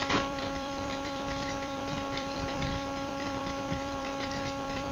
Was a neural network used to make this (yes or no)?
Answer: yes